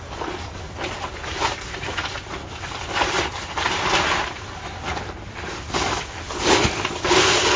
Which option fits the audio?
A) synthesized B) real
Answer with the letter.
B